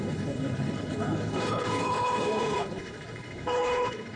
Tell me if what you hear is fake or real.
fake